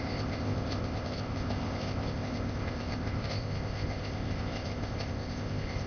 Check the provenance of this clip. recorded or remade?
remade